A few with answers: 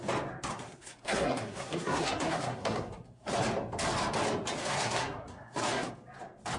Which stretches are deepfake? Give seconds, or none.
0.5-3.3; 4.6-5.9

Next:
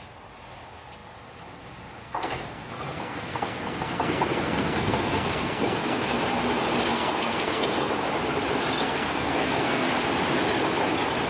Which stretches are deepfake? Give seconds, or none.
2.0-6.2; 6.9-7.9; 8.8-9.9

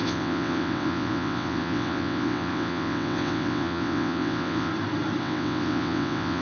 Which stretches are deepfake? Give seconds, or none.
0.0-4.7; 5.2-6.4

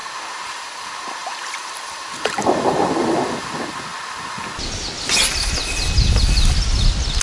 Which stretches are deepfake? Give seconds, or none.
0.0-2.3

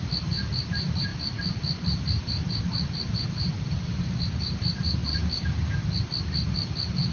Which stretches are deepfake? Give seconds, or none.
5.1-5.7

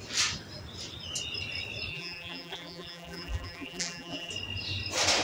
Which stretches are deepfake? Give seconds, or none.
1.9-4.3

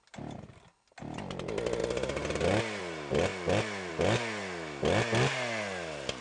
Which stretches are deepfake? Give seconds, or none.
none

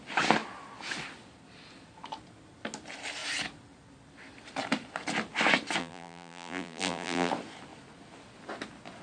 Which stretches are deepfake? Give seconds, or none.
5.8-7.3